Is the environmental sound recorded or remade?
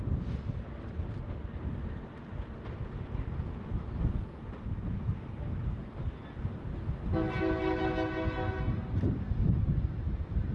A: recorded